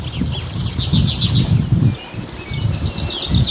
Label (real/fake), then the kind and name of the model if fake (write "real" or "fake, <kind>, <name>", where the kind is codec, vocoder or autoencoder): real